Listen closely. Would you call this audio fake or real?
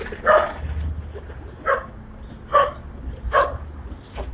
real